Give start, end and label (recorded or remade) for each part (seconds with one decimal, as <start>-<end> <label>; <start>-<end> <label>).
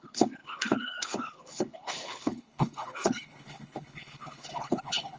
0.0-5.2 remade